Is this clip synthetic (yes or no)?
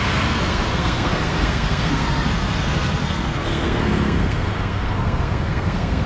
yes